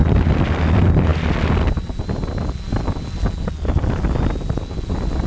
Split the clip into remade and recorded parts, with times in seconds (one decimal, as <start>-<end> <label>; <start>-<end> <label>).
0.0-5.3 recorded